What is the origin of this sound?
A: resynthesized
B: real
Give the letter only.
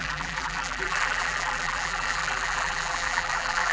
A